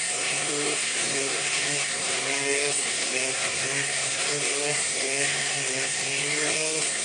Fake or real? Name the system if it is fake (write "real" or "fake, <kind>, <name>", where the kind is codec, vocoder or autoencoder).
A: fake, codec, SNAC